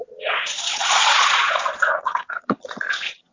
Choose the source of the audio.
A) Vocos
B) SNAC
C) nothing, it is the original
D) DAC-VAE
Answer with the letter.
A